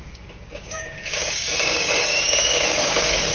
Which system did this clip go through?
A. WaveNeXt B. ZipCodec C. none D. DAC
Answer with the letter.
D